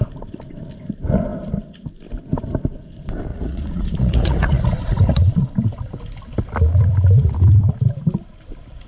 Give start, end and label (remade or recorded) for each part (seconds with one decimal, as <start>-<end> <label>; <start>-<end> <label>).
0.0-3.3 recorded; 3.3-5.5 remade; 5.5-8.9 recorded